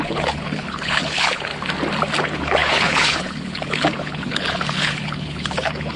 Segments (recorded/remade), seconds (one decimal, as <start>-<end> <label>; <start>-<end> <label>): 0.0-1.5 remade; 1.5-2.2 recorded; 2.2-6.0 remade